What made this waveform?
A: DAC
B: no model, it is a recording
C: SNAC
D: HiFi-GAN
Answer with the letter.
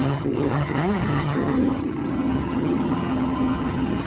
D